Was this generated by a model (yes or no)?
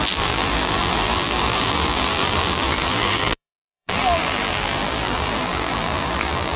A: yes